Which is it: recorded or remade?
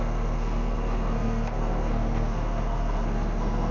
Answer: remade